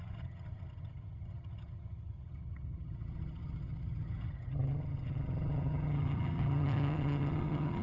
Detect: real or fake fake